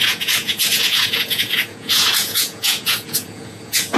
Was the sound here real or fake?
fake